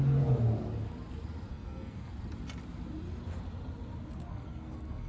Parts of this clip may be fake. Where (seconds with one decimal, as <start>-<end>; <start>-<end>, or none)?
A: 1.5-2.1; 4.3-5.1